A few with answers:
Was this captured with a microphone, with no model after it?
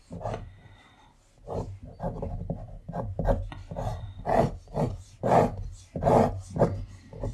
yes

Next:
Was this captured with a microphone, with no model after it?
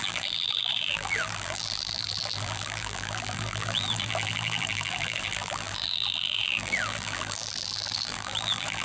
no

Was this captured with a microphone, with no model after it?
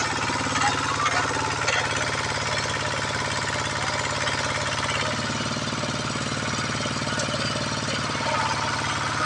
yes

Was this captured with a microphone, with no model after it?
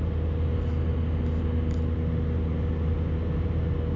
yes